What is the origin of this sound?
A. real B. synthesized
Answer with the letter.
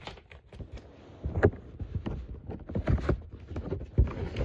A